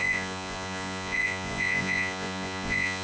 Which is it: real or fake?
fake